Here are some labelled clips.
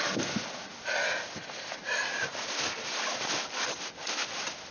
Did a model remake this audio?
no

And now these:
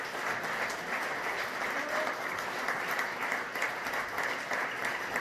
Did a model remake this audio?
no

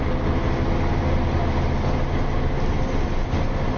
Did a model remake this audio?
no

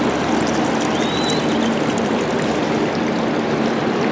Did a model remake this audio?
no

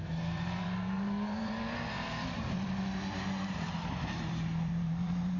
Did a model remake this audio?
yes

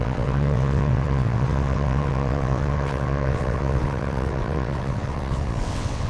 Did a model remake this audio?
yes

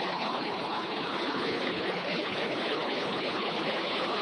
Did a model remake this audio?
yes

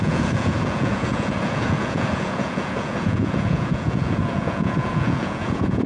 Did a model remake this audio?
yes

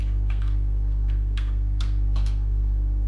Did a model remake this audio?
yes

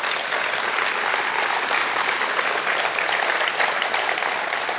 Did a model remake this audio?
yes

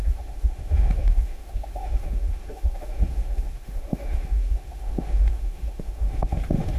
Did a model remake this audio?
yes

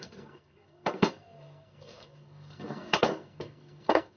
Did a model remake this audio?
yes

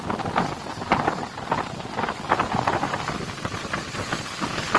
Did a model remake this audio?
no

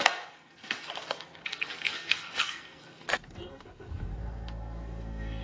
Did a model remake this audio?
yes